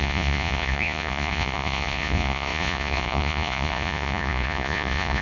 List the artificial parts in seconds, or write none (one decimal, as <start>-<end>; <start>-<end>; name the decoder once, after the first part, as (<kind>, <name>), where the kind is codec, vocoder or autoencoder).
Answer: 0.0-5.2 (vocoder, Vocos)

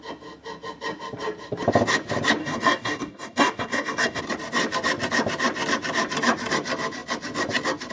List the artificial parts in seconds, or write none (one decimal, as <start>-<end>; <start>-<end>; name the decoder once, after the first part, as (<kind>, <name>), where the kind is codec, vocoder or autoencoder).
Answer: 2.4-4.2 (codec, DAC)

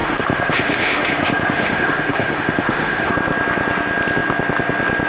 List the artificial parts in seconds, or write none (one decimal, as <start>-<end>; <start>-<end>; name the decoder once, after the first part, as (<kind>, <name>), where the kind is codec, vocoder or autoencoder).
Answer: 0.0-3.1 (autoencoder, DAC-VAE)

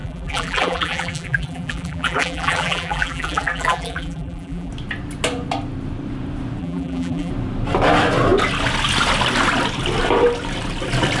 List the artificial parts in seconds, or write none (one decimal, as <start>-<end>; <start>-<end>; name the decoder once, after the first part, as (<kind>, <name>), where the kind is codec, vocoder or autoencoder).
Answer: 0.0-4.7 (vocoder, BigVGAN v2); 6.6-7.3

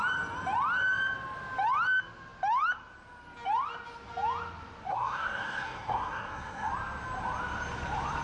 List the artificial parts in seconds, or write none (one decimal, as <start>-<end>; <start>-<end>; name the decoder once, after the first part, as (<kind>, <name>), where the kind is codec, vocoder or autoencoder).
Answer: 4.9-6.7 (codec, SNAC)

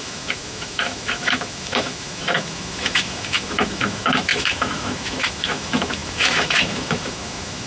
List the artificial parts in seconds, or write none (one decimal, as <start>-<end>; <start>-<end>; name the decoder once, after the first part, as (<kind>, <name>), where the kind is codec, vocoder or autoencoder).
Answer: 0.0-7.7 (autoencoder, DAC-VAE)